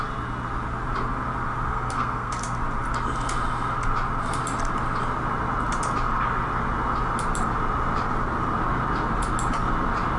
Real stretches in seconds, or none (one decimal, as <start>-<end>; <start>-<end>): 0.0-1.7; 2.4-10.2